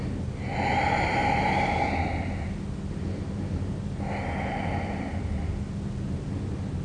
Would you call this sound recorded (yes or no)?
yes